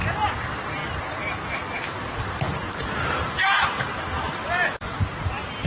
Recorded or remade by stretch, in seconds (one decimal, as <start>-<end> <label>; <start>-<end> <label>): 0.0-0.8 remade; 0.8-2.3 recorded; 2.3-5.7 remade